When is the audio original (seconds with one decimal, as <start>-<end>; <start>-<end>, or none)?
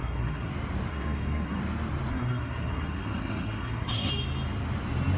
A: 0.5-0.9; 1.6-2.1; 4.1-5.2